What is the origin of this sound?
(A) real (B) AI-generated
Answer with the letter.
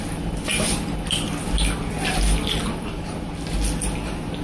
A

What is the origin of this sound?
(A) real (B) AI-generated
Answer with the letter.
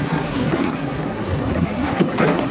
B